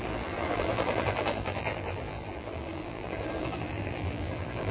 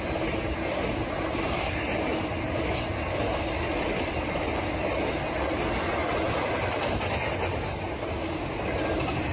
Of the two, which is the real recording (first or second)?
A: second